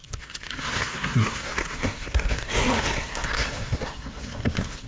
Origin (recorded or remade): remade